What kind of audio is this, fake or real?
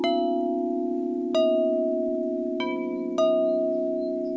real